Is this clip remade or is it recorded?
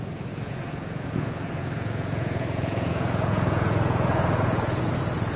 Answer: remade